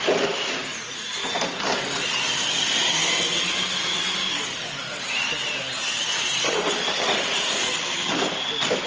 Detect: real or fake real